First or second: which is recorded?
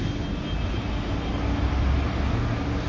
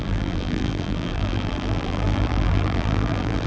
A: first